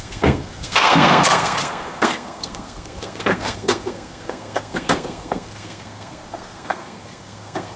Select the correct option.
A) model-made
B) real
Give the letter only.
A